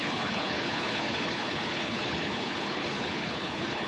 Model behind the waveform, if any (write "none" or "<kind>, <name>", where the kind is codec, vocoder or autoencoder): codec, HILCodec